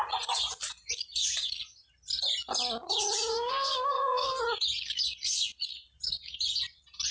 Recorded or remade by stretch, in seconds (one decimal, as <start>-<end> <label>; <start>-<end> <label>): 0.0-3.3 recorded; 3.3-4.4 remade; 4.4-7.1 recorded